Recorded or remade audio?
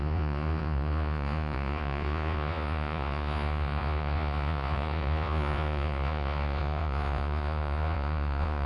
remade